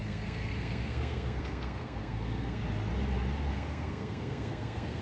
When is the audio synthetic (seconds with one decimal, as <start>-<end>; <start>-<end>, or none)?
0.0-2.6; 3.5-5.0